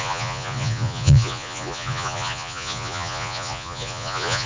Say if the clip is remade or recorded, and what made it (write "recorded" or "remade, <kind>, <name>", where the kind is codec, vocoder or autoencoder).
remade, vocoder, Vocos